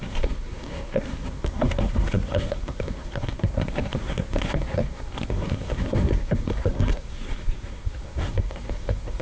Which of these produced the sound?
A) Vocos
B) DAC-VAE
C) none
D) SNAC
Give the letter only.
D